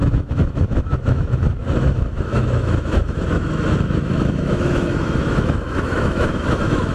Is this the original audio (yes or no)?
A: no